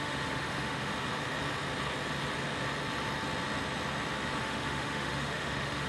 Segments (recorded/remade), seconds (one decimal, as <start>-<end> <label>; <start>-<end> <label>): 0.0-0.9 remade; 0.9-4.4 recorded; 4.4-5.9 remade